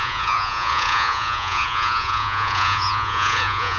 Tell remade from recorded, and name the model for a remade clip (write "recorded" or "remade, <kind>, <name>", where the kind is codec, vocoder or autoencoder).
remade, vocoder, Vocos